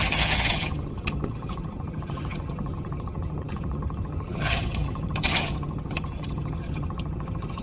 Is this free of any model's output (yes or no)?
no